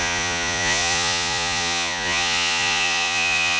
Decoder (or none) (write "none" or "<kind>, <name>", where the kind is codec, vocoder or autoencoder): vocoder, Vocos